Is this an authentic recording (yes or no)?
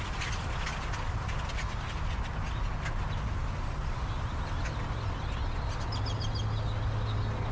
yes